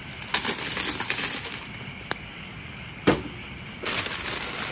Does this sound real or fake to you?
real